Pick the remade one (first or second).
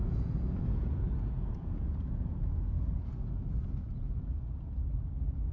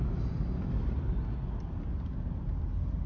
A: first